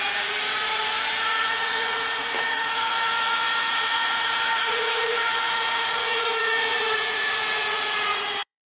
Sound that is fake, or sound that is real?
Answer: fake